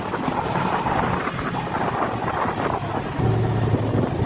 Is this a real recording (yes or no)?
yes